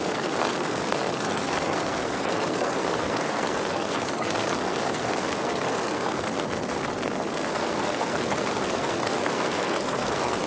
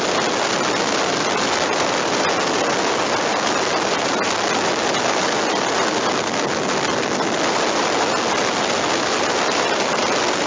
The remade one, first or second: first